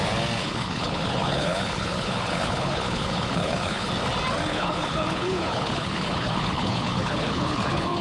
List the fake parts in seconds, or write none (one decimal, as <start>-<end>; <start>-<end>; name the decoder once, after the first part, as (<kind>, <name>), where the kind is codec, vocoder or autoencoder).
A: 0.4-3.9 (codec, HILCodec); 4.5-8.0